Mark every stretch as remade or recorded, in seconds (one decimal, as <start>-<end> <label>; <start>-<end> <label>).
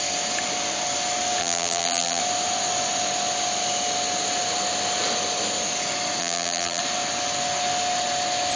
0.0-1.4 recorded; 1.4-2.2 remade; 2.2-6.2 recorded; 6.2-6.8 remade; 6.8-8.6 recorded